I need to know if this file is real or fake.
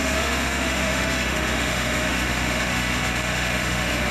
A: fake